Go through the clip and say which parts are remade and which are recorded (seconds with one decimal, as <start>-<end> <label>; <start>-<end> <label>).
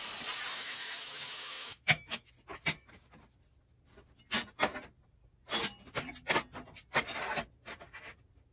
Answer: 0.0-0.5 recorded; 0.5-2.3 remade; 2.3-8.5 recorded